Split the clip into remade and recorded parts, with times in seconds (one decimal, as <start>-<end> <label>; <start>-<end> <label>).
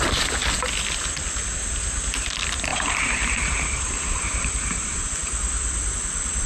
0.0-2.7 recorded; 2.7-5.1 remade; 5.1-6.5 recorded